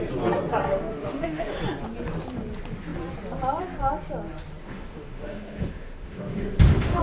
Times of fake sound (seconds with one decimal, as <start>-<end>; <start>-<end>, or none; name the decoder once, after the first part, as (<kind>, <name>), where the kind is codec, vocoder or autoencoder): 0.7-1.5 (autoencoder, DAC-VAE); 4.6-7.0

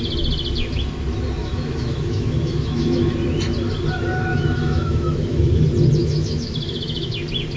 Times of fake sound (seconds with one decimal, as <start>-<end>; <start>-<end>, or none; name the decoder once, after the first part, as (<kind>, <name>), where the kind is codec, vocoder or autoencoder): 1.4-3.1 (autoencoder, DAC-VAE); 4.3-5.5; 6.0-7.1